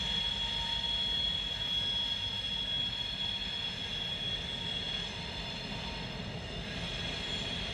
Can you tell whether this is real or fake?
real